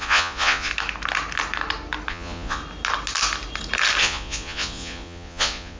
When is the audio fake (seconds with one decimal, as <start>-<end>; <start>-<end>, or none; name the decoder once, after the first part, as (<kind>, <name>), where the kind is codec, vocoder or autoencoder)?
0.0-0.7 (vocoder, Vocos); 2.1-2.6; 4.0-5.8